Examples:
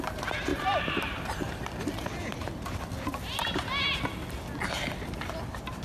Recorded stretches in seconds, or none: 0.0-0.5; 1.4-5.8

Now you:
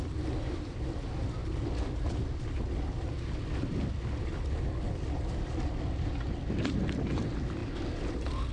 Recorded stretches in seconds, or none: 1.4-3.4; 7.6-8.5

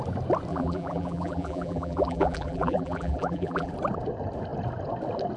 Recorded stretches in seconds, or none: 0.0-0.5; 3.7-5.4

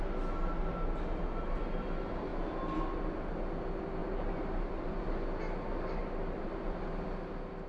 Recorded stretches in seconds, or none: 0.0-4.0; 5.0-6.0; 6.8-7.7